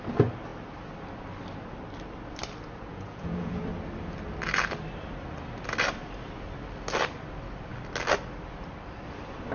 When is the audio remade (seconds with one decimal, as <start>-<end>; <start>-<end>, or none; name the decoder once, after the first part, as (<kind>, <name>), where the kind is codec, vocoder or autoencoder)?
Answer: 2.9-3.6 (vocoder, Vocos)